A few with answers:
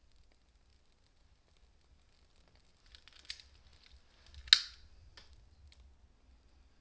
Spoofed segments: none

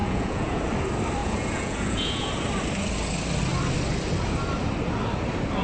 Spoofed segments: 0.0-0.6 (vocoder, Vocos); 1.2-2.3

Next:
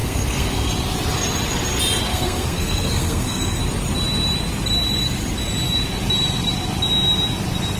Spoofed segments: 0.0-0.7 (codec, SNAC); 2.1-3.6

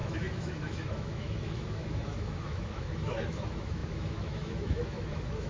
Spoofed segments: 0.0-5.5 (autoencoder, DAC-VAE)